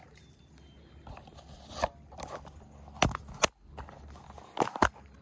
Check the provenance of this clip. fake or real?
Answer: real